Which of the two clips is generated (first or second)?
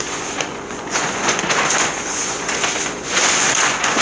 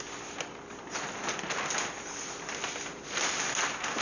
first